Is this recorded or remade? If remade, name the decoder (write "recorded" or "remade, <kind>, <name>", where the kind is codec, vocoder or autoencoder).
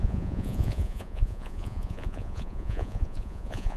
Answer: remade, vocoder, Vocos